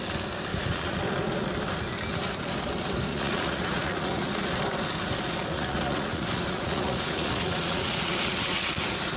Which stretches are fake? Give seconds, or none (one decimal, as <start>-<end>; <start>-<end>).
0.5-1.0; 3.1-4.4; 5.4-8.7